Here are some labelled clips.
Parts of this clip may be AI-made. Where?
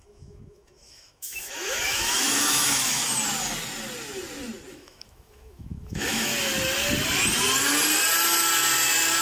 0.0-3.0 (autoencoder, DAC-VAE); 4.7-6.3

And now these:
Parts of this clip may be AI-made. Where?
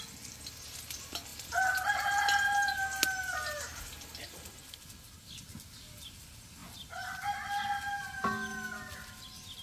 none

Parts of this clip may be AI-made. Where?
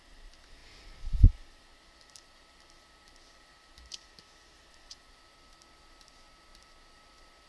none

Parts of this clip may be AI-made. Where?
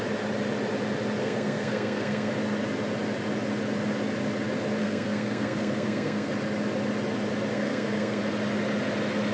1.2-2.3 (codec, SNAC); 4.8-6.3; 7.5-8.2